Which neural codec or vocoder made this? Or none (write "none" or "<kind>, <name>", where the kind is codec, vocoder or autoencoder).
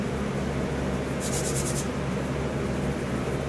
none